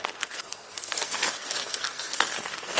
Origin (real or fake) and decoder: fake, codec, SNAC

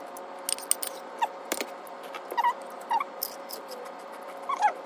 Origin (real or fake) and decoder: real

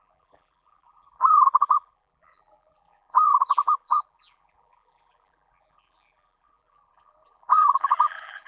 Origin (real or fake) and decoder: fake, vocoder, BigVGAN v2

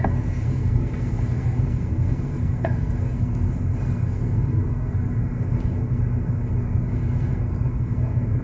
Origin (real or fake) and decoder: fake, codec, SNAC